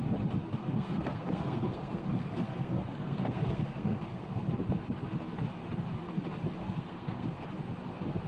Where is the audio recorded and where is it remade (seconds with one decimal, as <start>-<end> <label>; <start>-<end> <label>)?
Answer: 0.0-0.4 recorded; 0.4-4.5 remade; 4.5-6.6 recorded; 6.6-7.5 remade; 7.5-8.3 recorded